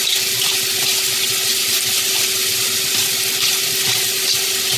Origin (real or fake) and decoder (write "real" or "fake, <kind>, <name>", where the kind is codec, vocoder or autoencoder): real